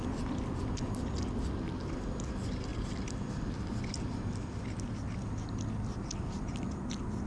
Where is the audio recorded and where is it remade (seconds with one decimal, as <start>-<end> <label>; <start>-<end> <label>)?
0.0-7.3 recorded